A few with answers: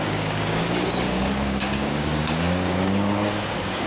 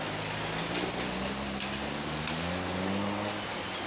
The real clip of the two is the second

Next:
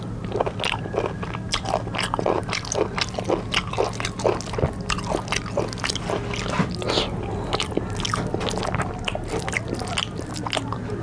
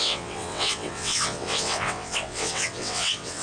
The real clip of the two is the first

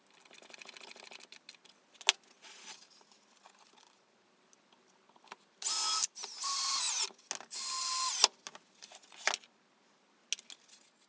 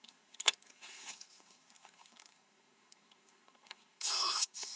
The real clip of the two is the first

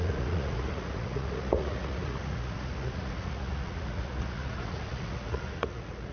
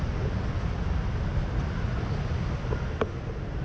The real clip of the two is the second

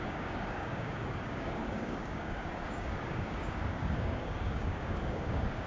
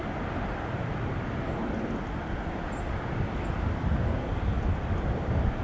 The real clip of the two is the second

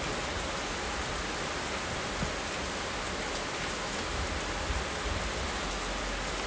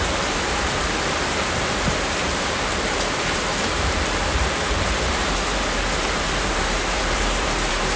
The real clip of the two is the first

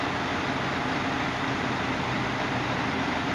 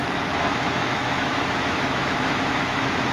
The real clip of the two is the first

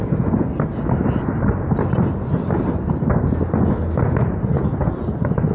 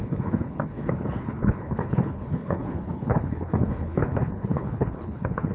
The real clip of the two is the first